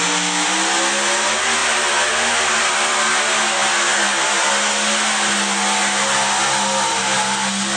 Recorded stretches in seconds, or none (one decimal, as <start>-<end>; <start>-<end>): 0.0-1.6; 3.2-3.6; 4.5-7.8